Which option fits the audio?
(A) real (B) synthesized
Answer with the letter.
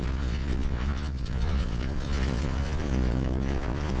B